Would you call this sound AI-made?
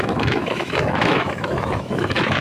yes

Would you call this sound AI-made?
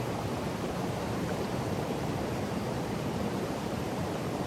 yes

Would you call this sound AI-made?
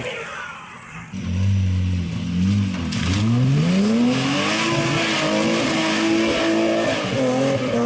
no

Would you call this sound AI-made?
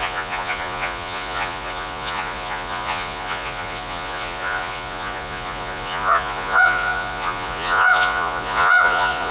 yes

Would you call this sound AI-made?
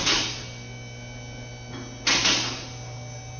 no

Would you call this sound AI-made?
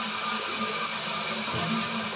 no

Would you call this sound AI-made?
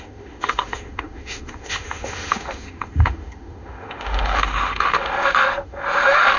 yes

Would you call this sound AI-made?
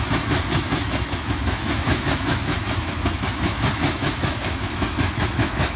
yes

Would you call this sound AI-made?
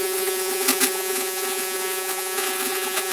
yes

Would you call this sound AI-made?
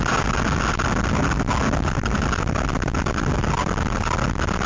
no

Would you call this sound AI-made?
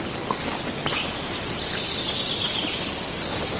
no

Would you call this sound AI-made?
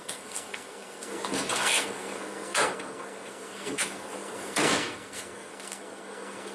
yes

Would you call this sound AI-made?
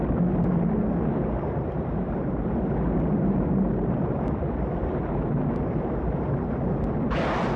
no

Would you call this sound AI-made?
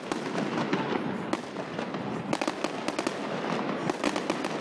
no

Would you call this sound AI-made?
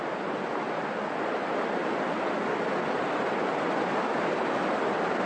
no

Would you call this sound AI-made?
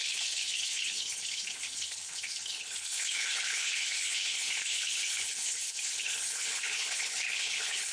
yes